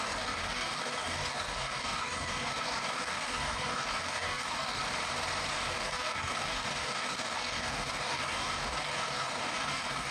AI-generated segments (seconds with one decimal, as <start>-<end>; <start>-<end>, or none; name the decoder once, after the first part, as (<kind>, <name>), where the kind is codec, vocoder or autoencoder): 0.0-4.8 (codec, DAC); 5.5-10.1